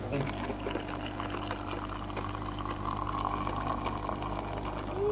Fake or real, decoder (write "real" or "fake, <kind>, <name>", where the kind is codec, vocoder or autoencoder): real